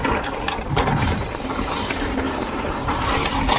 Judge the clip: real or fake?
fake